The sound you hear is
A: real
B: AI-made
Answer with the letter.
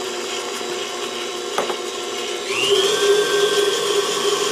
A